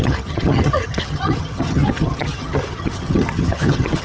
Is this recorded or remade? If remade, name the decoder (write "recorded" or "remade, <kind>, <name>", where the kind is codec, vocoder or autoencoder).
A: remade, vocoder, HiFi-GAN